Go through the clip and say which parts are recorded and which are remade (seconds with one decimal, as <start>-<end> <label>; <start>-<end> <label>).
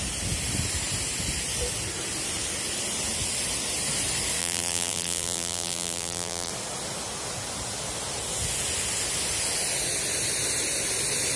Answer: 0.0-4.4 recorded; 4.4-6.5 remade; 6.5-11.4 recorded